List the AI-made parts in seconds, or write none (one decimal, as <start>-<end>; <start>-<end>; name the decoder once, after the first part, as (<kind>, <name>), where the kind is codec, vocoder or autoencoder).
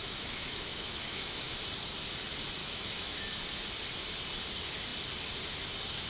0.0-1.6 (autoencoder, DAC-VAE); 2.6-3.2